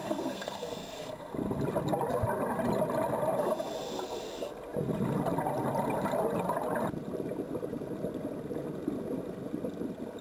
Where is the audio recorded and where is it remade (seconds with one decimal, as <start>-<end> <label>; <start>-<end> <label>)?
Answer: 0.0-1.3 remade; 1.3-10.2 recorded